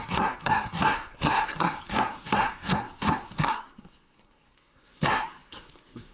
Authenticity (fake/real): fake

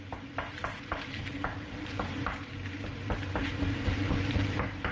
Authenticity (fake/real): fake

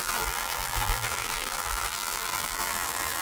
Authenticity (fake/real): fake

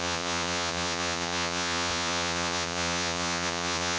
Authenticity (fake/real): fake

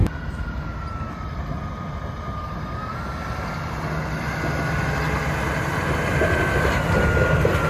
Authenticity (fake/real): real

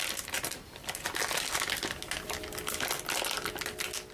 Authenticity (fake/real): real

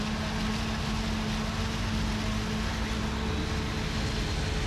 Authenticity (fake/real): real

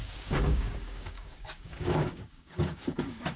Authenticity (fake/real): fake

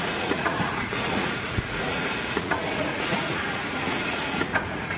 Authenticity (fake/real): fake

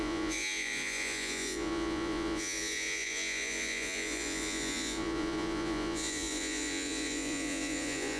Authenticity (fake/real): fake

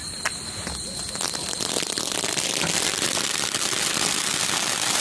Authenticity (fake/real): real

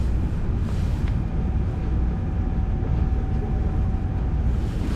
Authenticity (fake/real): real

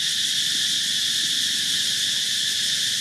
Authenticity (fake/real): real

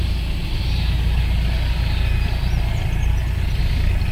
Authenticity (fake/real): real